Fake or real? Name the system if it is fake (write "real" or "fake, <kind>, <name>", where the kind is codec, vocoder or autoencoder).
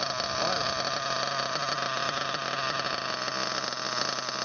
real